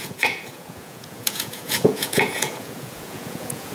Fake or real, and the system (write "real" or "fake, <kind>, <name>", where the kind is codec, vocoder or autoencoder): fake, vocoder, Vocos